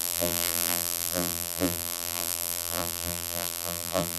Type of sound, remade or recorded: remade